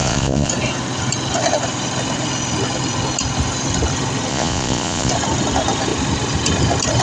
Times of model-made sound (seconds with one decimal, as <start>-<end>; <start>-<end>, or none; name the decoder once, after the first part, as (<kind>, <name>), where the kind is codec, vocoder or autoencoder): 0.0-0.5 (vocoder, Vocos); 4.3-5.1